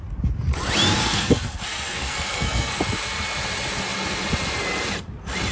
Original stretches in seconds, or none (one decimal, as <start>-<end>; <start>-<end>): 0.0-1.0; 2.8-5.5